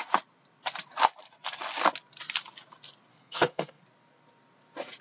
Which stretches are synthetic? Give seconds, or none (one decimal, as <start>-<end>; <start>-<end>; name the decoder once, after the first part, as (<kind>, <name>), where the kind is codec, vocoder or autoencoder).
3.1-3.8 (codec, SNAC)